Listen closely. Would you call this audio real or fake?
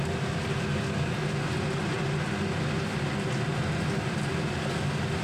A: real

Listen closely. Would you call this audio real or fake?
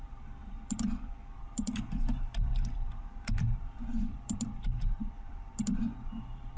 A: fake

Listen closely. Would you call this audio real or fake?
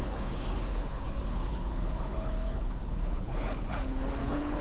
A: fake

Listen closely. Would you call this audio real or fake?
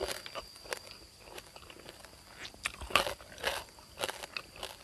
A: real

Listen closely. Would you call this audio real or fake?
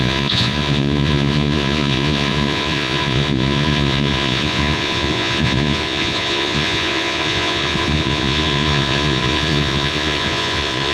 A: fake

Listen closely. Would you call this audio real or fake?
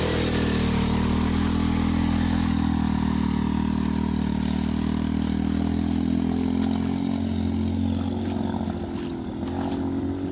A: real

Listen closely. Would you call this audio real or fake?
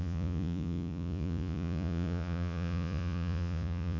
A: fake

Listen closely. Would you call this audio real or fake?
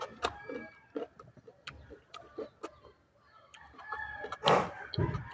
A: real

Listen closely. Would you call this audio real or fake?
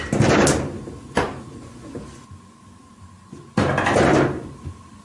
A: real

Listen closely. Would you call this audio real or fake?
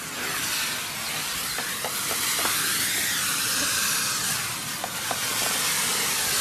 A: real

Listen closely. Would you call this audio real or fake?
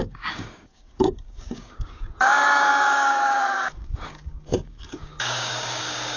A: fake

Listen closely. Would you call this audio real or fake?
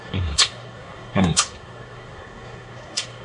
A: fake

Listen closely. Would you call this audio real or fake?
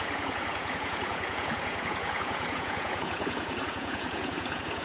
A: fake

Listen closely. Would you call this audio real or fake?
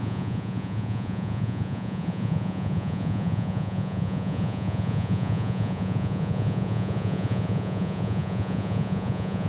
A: fake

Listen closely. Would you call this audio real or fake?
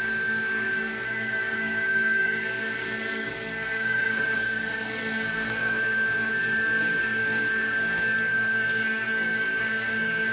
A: fake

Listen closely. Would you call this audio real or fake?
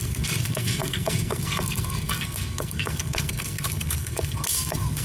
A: fake